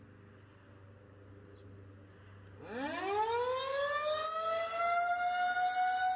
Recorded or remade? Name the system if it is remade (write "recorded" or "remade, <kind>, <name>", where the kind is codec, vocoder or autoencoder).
recorded